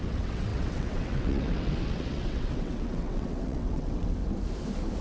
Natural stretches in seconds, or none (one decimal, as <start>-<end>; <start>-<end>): 4.2-5.0